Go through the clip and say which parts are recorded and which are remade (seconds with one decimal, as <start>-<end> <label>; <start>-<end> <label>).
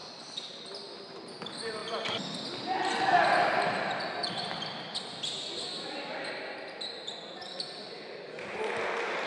0.0-9.3 recorded